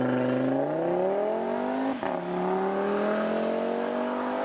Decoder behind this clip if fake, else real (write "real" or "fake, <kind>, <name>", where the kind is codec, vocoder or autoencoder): real